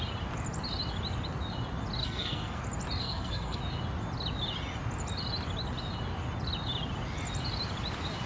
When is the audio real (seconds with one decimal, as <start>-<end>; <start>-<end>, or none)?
0.0-2.0; 2.6-3.0; 3.6-8.3